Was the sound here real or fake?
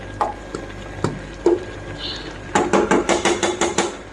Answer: real